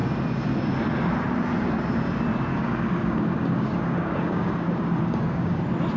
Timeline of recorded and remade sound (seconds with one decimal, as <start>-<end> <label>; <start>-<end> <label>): 0.0-2.5 recorded; 2.5-5.6 remade; 5.6-6.0 recorded